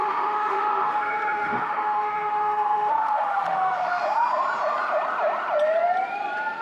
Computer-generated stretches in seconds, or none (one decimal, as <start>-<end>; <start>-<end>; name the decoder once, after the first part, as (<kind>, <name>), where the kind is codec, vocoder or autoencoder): 0.0-4.0 (autoencoder, DAC-VAE)